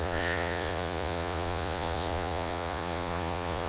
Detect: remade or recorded remade